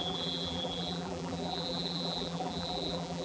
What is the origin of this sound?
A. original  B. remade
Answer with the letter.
B